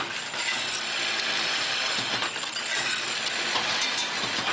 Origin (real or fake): real